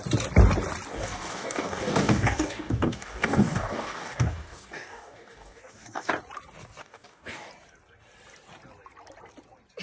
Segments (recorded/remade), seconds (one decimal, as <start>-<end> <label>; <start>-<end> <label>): 0.0-0.9 recorded; 0.9-6.1 remade; 6.1-6.8 recorded; 6.8-7.5 remade; 7.5-9.8 recorded